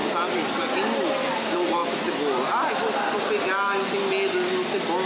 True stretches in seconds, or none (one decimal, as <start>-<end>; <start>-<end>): 0.0-5.1